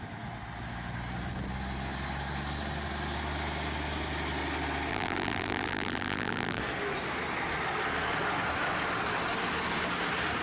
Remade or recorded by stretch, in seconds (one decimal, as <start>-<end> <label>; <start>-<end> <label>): 0.0-4.9 recorded; 4.9-6.6 remade; 6.6-10.4 recorded